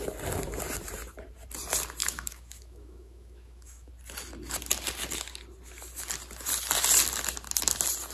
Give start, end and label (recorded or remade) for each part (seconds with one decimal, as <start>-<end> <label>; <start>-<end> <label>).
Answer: 0.0-2.0 recorded; 2.0-3.9 remade; 3.9-8.1 recorded